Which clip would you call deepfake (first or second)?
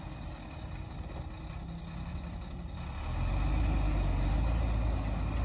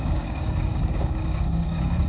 second